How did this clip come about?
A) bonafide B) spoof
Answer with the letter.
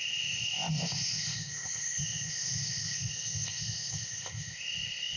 B